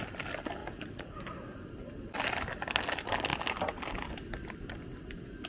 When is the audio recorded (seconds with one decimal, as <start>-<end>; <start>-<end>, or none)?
0.0-0.6; 1.7-5.5